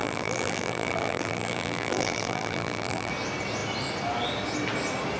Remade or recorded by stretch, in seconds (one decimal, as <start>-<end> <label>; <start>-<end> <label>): 0.0-3.1 remade; 3.1-5.2 recorded